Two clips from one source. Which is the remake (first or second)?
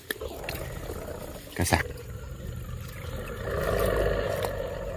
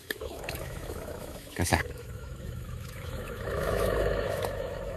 second